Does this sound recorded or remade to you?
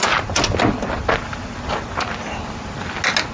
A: recorded